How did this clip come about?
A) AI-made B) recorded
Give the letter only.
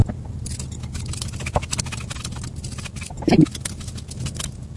B